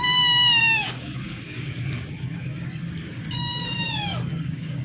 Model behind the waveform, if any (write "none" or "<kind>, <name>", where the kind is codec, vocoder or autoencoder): codec, DAC